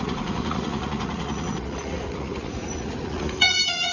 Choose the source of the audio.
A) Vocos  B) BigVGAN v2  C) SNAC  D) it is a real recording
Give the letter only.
A